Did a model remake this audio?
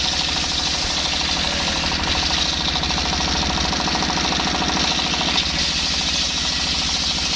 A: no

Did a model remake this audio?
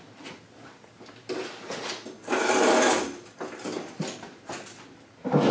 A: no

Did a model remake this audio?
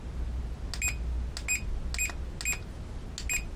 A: no